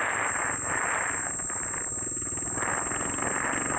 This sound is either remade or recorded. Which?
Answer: recorded